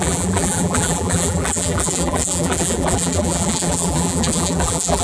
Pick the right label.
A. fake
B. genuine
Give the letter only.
A